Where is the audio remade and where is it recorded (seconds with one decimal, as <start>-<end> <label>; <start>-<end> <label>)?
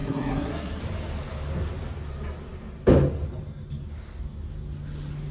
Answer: 0.0-0.8 remade; 0.8-5.3 recorded